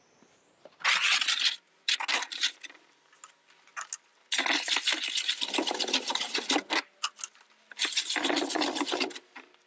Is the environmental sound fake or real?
real